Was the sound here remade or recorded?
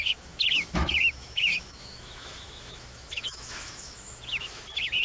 remade